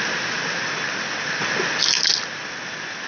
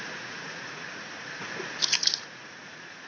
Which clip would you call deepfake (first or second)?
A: second